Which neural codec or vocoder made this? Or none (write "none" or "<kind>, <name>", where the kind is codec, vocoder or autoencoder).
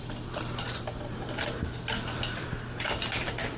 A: none